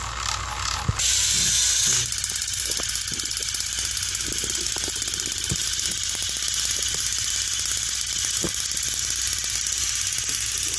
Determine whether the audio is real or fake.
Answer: real